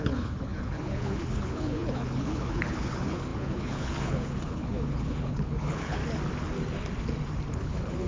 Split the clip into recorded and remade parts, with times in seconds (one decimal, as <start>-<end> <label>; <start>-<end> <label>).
0.0-6.0 remade; 6.0-7.5 recorded; 7.5-8.1 remade